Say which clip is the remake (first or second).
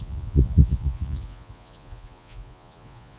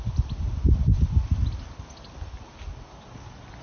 first